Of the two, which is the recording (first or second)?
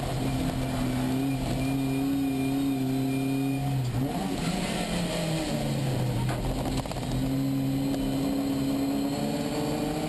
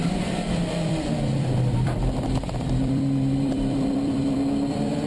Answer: first